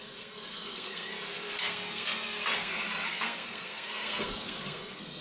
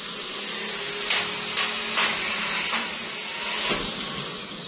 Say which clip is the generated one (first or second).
first